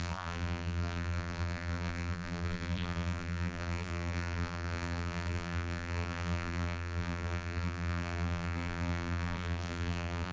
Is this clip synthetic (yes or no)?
yes